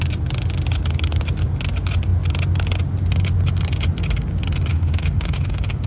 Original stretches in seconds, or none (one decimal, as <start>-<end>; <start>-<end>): 0.0-4.7